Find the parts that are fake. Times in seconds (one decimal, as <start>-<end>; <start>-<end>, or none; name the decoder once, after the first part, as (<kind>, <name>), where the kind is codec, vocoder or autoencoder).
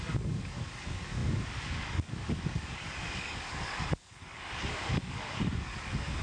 0.0-6.2 (codec, DAC)